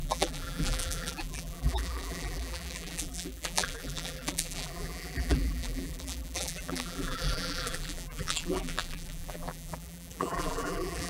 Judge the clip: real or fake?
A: fake